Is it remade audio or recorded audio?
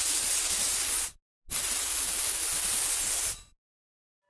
recorded